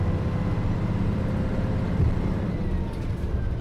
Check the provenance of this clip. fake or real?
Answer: real